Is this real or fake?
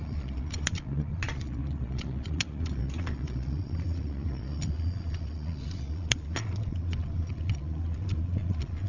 fake